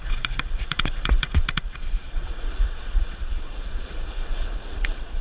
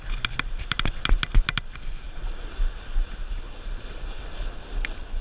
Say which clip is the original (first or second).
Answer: second